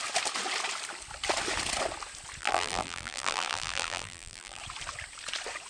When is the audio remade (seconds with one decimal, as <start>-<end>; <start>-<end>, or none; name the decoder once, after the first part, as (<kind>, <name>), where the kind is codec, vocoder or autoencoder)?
2.4-4.6 (vocoder, BigVGAN v2)